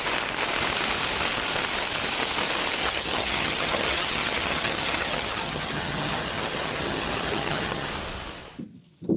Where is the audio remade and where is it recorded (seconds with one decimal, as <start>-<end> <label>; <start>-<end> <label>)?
0.0-2.8 recorded; 2.8-7.9 remade; 7.9-9.2 recorded

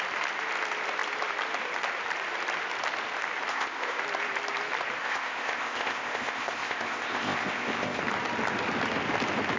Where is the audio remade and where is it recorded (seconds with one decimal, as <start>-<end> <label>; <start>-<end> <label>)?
0.0-3.5 recorded; 3.5-4.0 remade; 4.0-5.0 recorded; 5.0-8.0 remade; 8.0-9.6 recorded

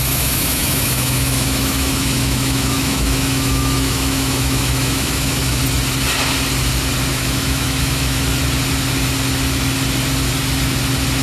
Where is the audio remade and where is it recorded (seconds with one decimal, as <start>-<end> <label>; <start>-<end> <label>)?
0.0-5.6 remade; 5.6-7.1 recorded; 7.1-8.3 remade; 8.3-11.2 recorded

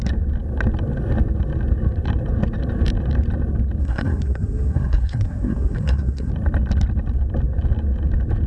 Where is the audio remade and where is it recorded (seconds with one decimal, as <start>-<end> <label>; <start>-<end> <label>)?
0.0-3.8 recorded; 3.8-6.3 remade; 6.3-8.5 recorded

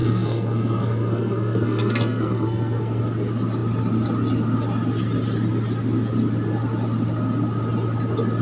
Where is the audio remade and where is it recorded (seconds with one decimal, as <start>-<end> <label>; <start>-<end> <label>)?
0.0-3.0 remade; 3.0-8.4 recorded

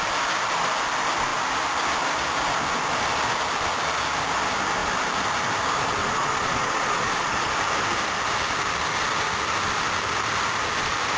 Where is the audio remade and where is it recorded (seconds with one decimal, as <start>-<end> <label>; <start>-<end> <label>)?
0.0-6.0 recorded; 6.0-7.6 remade; 7.6-11.2 recorded

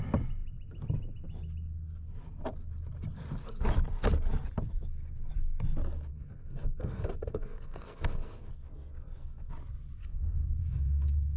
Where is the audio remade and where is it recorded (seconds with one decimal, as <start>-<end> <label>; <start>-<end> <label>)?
0.0-6.1 recorded; 6.1-9.5 remade; 9.5-10.0 recorded; 10.0-11.4 remade

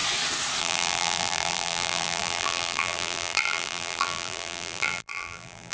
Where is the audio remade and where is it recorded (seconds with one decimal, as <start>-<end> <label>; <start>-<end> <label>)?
0.0-0.6 recorded; 0.6-5.7 remade